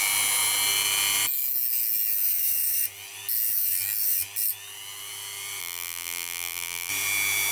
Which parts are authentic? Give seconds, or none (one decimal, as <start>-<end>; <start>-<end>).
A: 0.0-5.6; 6.9-7.5